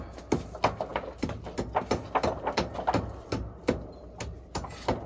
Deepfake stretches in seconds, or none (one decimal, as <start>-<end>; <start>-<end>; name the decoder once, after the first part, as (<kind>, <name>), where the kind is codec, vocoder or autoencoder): none